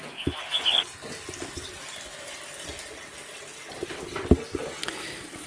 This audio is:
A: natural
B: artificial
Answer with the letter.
A